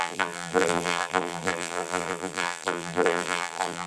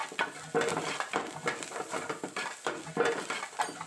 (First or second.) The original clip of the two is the second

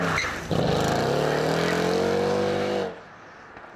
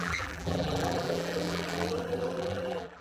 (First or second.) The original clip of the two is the first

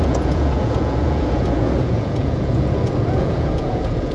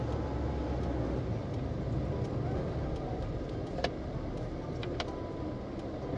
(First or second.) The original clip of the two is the second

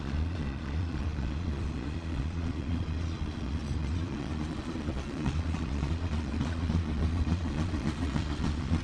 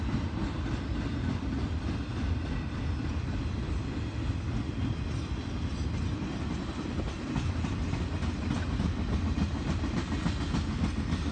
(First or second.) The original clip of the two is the second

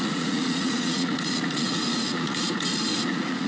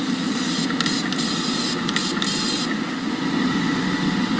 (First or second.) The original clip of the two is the second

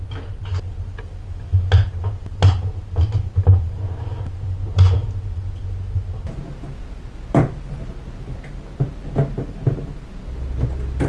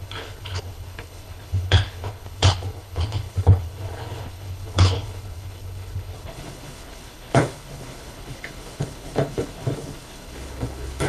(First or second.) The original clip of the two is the first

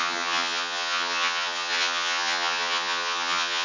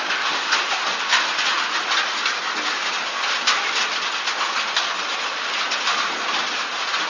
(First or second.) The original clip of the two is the second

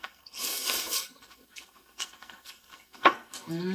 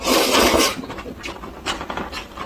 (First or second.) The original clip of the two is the second